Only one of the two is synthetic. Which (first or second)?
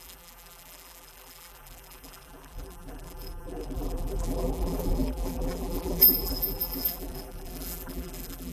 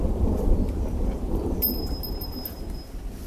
first